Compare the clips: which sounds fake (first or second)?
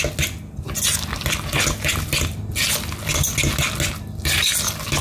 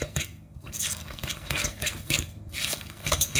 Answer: second